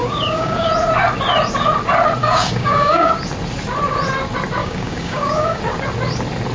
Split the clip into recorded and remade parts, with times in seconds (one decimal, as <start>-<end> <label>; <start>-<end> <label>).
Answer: 0.0-0.7 remade; 0.7-2.2 recorded; 2.2-3.1 remade; 3.1-4.6 recorded; 4.6-5.6 remade; 5.6-6.5 recorded